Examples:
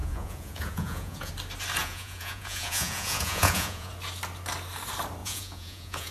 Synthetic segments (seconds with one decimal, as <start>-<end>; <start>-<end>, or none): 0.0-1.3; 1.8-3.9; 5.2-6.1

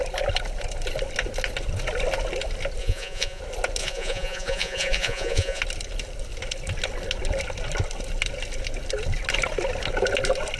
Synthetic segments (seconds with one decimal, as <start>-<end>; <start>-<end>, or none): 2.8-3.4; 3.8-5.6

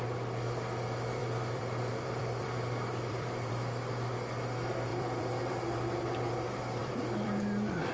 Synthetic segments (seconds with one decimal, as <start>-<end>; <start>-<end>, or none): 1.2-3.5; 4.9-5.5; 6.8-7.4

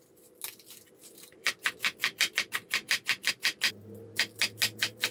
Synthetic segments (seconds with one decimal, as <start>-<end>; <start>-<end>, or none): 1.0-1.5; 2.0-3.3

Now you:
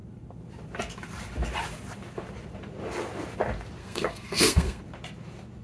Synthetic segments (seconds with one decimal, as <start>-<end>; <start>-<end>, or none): 3.8-4.8